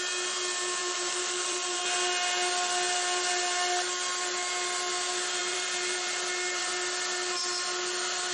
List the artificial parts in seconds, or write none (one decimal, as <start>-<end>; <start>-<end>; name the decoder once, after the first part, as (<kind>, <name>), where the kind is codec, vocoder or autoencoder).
0.8-1.8 (vocoder, BigVGAN v2); 5.4-6.6